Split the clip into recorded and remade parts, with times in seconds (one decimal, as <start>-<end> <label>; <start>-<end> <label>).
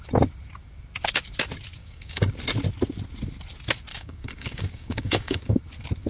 0.0-1.8 recorded; 1.8-2.3 remade; 2.3-3.9 recorded; 3.9-5.6 remade; 5.6-6.1 recorded